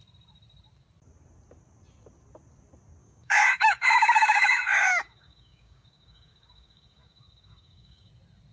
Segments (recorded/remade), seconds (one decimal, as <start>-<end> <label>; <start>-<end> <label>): 0.0-3.0 recorded; 3.0-8.1 remade; 8.1-8.5 recorded